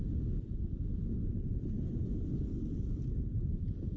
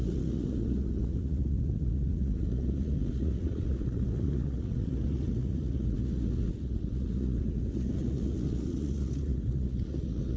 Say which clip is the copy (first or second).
second